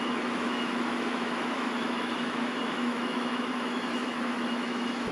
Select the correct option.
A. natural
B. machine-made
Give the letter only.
B